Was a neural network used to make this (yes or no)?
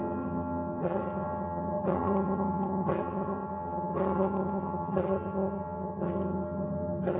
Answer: yes